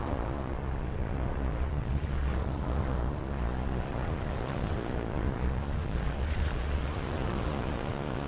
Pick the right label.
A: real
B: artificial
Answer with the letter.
B